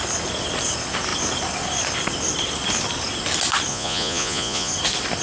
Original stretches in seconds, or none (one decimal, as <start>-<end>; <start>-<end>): 0.0-3.7; 4.7-5.2